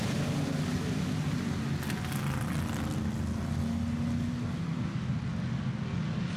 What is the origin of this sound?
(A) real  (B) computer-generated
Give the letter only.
A